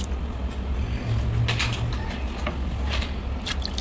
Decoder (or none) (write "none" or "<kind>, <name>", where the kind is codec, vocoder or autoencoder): none